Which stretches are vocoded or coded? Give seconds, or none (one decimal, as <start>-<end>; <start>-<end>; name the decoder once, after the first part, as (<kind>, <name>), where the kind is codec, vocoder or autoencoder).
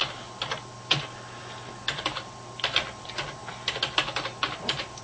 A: none